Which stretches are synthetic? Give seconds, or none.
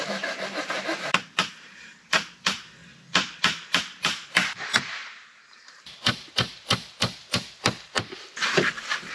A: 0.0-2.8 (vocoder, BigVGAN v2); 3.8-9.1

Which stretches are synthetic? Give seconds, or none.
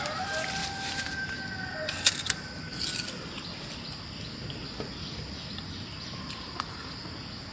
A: 0.6-1.4 (vocoder, BigVGAN v2)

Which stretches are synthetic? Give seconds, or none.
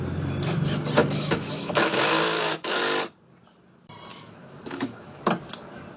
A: 1.0-2.8 (autoencoder, DAC-VAE); 4.1-5.2